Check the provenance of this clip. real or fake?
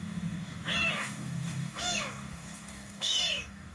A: fake